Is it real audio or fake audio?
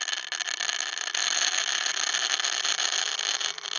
real